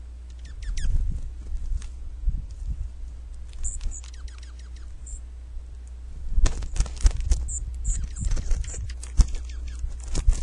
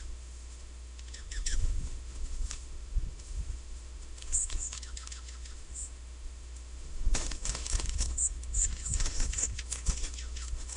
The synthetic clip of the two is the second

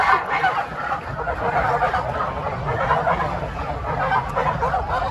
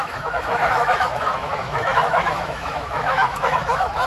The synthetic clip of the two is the second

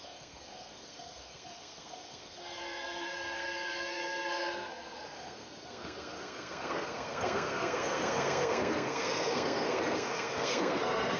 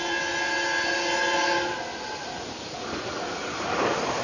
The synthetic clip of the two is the first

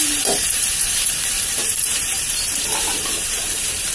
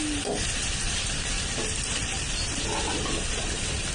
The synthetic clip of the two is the first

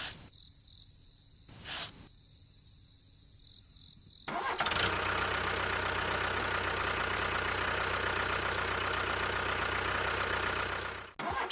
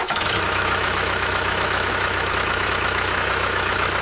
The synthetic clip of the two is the second